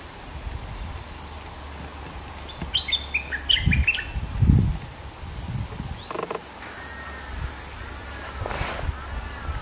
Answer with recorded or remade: recorded